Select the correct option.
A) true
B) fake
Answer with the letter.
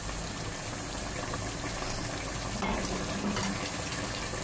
A